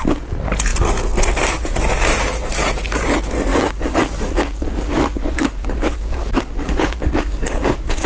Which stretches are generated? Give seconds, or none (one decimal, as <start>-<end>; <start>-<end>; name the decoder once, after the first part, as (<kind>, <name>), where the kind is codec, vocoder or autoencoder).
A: 3.5-8.1 (codec, DAC)

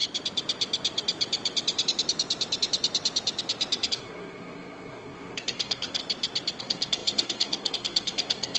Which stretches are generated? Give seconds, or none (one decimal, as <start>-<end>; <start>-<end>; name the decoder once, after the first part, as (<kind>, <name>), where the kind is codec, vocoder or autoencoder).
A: 3.9-6.0 (codec, SNAC); 6.6-8.6